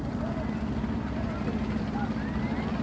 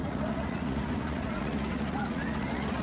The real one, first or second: first